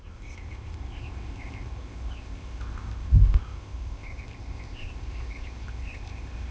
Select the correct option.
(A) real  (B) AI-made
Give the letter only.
B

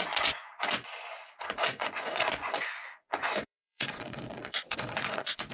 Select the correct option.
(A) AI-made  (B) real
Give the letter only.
A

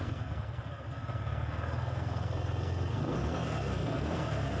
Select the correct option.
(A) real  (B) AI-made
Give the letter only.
B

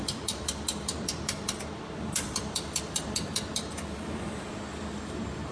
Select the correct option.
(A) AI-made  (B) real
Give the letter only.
A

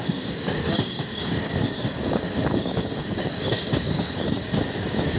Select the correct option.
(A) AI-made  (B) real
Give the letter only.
A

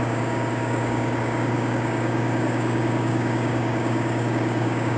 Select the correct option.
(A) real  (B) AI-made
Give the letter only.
B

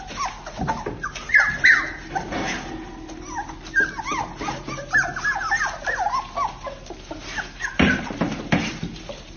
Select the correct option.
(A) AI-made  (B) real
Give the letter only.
B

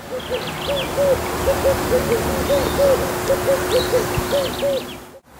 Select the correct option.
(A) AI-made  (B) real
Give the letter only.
B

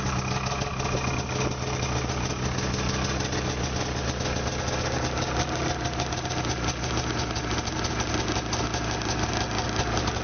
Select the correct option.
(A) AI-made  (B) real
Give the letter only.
B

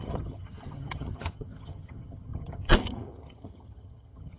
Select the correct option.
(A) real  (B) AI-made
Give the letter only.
B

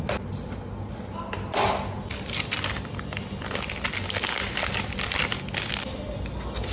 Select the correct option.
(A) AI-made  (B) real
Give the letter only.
B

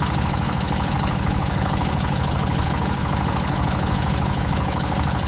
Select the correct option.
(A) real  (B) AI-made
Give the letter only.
B